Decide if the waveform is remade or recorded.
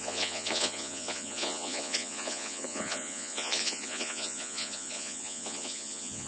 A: remade